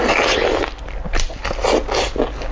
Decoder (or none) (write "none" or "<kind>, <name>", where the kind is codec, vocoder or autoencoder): none